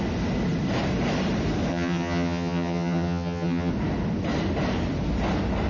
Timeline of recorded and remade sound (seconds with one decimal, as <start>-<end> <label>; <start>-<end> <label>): 0.0-1.7 recorded; 1.7-3.7 remade; 3.7-5.7 recorded

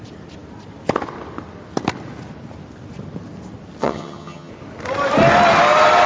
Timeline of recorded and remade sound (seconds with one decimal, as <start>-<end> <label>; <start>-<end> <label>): 0.0-3.8 recorded; 3.8-4.5 remade; 4.5-6.1 recorded

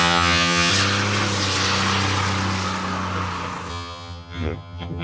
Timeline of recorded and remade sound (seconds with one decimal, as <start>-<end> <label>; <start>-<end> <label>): 0.0-0.7 remade; 0.7-3.7 recorded; 3.7-5.0 remade

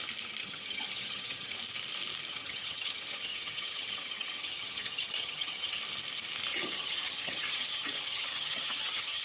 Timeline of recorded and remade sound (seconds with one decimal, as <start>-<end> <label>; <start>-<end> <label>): 0.0-0.4 recorded; 0.4-1.5 remade; 1.5-2.3 recorded; 2.3-5.8 remade; 5.8-6.5 recorded; 6.5-9.2 remade